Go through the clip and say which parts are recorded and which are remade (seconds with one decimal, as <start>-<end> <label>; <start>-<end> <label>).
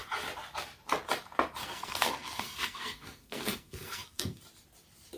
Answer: 0.0-1.6 recorded; 1.6-4.4 remade; 4.4-5.2 recorded